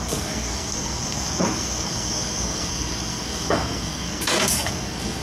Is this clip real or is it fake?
fake